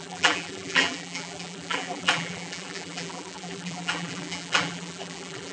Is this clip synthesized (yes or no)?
yes